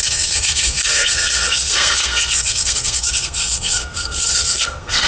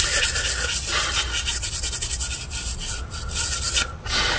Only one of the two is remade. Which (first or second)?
first